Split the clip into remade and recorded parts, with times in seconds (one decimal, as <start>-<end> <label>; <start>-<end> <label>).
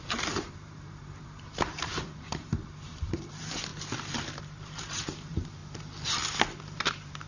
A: 0.0-3.7 remade; 3.7-4.4 recorded; 4.4-5.6 remade; 5.6-6.6 recorded; 6.6-7.3 remade